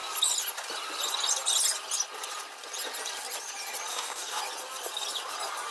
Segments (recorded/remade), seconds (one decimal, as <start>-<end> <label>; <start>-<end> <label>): 0.0-3.9 recorded; 3.9-4.4 remade; 4.4-5.7 recorded